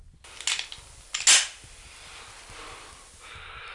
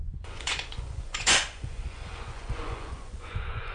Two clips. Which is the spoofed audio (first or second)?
second